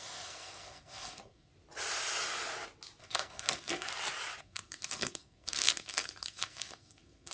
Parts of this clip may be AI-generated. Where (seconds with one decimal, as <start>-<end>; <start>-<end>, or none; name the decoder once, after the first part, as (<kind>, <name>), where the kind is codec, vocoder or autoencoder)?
0.0-1.5 (codec, SNAC); 3.0-3.9; 4.4-7.3